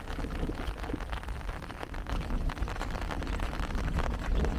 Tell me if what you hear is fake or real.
real